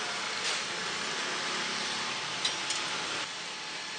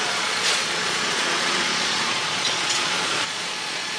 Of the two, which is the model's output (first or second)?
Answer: second